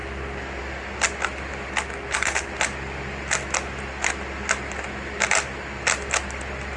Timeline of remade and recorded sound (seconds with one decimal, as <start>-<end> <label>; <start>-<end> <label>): 0.0-6.8 recorded

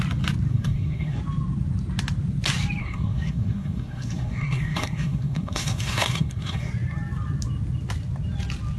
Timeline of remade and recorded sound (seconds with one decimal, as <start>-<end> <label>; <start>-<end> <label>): 0.0-0.5 recorded; 0.5-1.2 remade; 1.2-2.8 recorded; 2.8-6.7 remade; 6.7-8.8 recorded

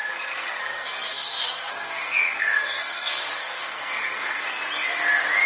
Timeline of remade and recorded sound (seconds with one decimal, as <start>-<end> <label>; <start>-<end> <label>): 0.0-4.6 remade; 4.6-5.5 recorded

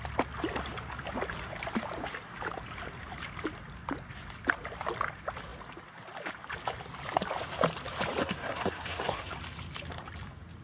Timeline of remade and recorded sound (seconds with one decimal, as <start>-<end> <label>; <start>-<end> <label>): 0.0-8.2 recorded; 8.2-9.3 remade; 9.3-10.6 recorded

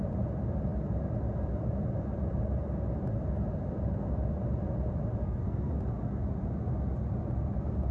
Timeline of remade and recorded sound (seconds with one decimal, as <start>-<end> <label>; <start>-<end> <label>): 0.0-5.2 recorded; 5.2-5.8 remade; 5.8-7.9 recorded

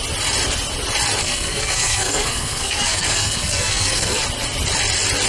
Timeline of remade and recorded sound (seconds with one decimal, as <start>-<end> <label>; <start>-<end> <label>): 0.0-1.2 recorded; 1.2-4.2 remade; 4.2-5.3 recorded

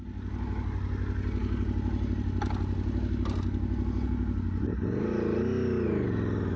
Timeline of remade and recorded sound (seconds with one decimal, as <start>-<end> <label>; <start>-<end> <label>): 0.0-6.6 recorded

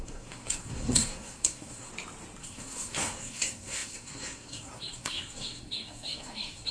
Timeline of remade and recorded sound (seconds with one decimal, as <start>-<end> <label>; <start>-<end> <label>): 0.0-1.9 remade; 1.9-2.4 recorded; 2.4-6.7 remade